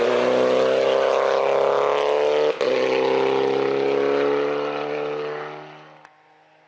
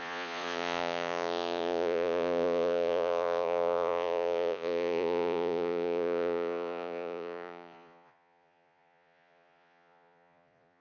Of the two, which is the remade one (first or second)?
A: second